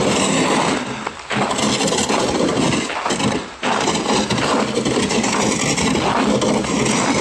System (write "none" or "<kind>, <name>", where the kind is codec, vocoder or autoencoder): none